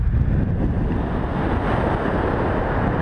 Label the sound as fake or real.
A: real